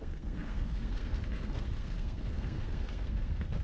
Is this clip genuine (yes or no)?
no